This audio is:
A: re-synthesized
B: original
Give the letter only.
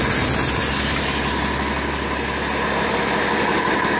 B